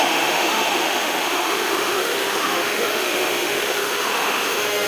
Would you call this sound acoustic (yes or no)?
no